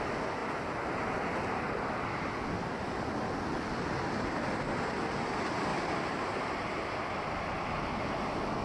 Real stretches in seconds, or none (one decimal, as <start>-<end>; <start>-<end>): 0.0-8.6